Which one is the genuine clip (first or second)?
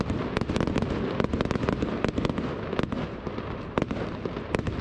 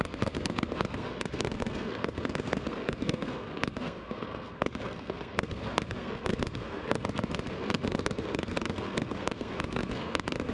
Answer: first